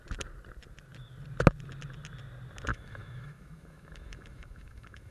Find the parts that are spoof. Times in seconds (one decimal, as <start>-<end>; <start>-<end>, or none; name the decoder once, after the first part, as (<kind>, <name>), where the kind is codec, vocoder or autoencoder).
2.7-5.1 (autoencoder, DAC-VAE)